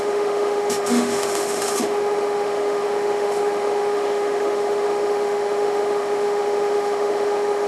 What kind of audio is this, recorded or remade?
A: remade